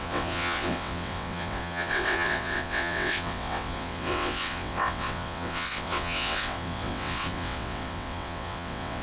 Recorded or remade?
remade